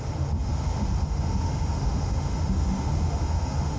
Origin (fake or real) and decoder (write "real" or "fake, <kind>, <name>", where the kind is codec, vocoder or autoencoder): fake, autoencoder, DAC-VAE